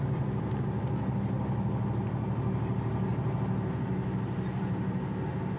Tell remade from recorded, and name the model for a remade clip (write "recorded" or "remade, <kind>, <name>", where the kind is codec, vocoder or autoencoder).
recorded